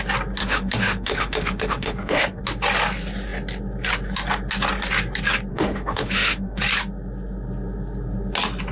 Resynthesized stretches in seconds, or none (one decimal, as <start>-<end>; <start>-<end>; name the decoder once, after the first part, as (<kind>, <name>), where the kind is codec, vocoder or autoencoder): 0.4-2.4 (autoencoder, DAC-VAE); 5.5-6.6